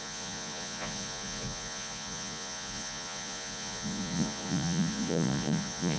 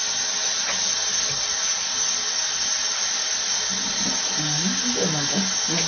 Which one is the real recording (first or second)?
second